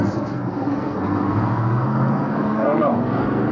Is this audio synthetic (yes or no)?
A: yes